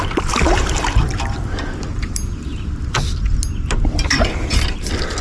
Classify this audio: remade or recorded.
recorded